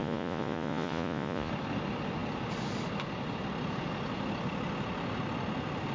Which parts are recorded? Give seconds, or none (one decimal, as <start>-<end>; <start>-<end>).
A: 1.5-5.9